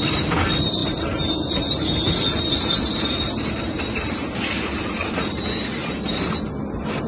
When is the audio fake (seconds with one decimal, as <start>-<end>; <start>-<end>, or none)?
none